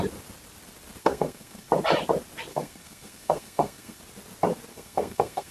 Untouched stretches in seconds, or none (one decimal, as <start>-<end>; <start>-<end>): 0.0-1.0; 1.7-2.5; 4.0-4.7